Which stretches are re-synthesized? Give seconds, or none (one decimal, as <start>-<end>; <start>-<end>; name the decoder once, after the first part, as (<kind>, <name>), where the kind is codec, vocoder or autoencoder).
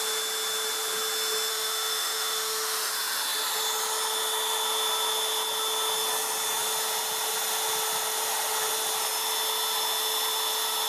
1.5-2.9 (autoencoder, DAC-VAE)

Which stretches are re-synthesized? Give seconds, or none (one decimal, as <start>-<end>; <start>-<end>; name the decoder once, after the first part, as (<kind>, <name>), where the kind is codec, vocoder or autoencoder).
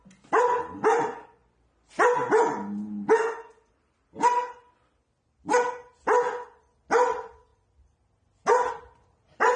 none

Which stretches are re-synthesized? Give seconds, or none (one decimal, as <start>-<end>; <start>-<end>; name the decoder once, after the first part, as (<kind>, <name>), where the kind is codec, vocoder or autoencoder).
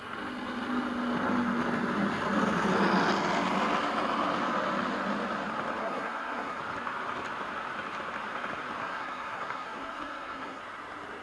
5.8-6.6 (codec, SNAC); 8.8-10.6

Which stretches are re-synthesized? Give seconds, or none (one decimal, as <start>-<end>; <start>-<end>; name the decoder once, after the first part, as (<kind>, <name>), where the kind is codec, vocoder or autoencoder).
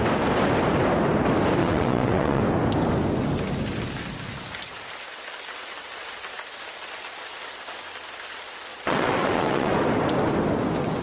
1.6-2.4 (vocoder, WaveNeXt); 8.7-9.7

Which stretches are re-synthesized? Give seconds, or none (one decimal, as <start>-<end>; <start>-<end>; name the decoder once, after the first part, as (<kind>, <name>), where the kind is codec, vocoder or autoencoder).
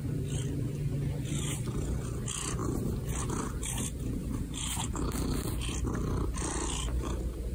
4.2-5.0 (vocoder, BigVGAN v2)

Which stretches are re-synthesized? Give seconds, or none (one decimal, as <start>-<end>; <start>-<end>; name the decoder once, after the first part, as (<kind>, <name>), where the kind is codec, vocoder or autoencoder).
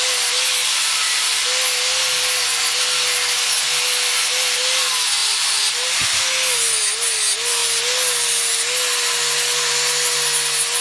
0.6-1.4 (vocoder, BigVGAN v2); 5.2-6.2